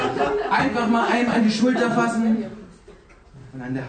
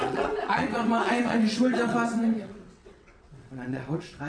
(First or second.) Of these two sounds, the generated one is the second